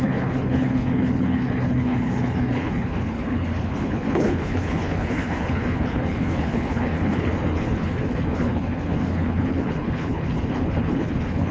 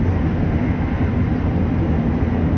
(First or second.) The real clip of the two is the second